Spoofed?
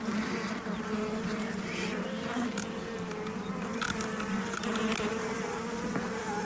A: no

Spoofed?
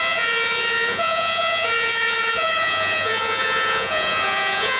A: yes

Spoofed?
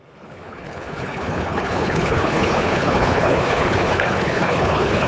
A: yes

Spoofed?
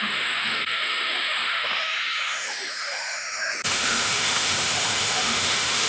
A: yes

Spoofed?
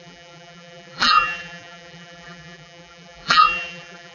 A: yes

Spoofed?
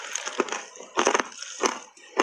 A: no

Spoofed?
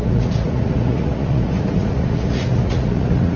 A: yes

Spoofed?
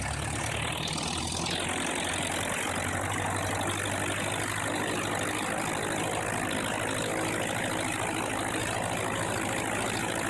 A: no